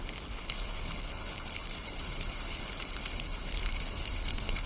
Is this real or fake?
fake